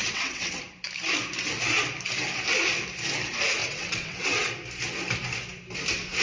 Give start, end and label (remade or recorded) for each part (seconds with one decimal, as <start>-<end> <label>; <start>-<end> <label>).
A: 0.0-0.6 remade; 0.6-3.6 recorded; 3.6-4.5 remade; 4.5-6.2 recorded